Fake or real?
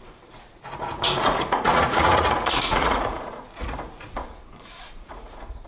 fake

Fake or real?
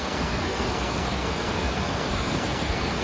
fake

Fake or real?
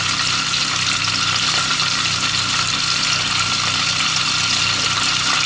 real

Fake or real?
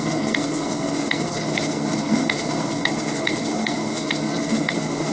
fake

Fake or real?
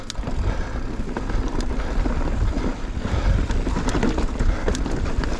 real